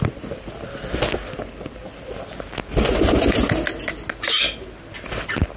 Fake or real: real